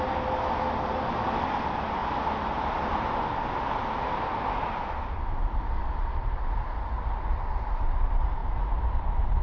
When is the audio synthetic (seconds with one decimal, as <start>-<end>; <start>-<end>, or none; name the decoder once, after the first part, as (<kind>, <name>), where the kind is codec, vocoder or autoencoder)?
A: none